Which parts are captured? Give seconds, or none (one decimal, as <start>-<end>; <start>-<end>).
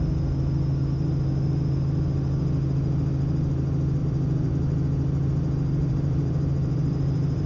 0.0-4.0; 4.5-5.8